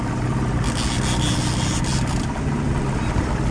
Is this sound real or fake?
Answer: real